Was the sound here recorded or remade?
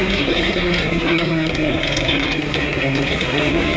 remade